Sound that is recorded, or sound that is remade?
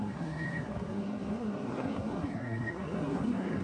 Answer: remade